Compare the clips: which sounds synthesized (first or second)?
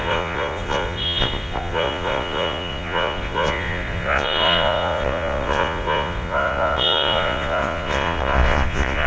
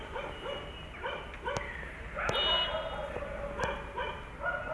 first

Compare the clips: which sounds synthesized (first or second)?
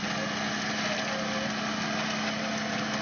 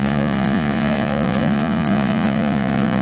second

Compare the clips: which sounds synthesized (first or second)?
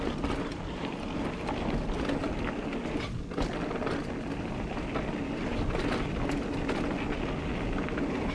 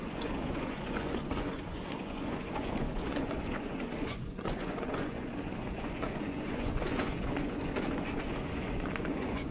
second